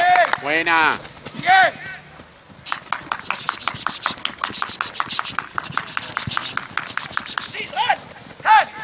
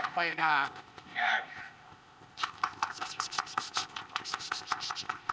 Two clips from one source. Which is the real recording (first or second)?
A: first